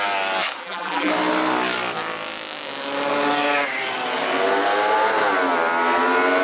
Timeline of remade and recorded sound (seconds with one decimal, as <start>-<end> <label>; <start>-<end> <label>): 0.0-0.6 recorded; 0.6-1.1 remade; 1.1-6.4 recorded